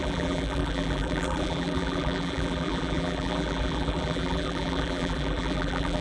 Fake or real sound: fake